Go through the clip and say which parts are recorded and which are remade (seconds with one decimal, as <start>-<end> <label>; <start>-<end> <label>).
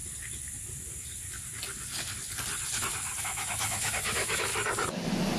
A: 0.0-3.2 recorded; 3.2-4.5 remade; 4.5-5.4 recorded